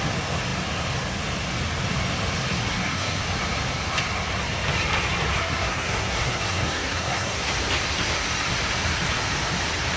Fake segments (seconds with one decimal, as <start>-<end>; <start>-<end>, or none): 2.6-3.2; 5.3-7.5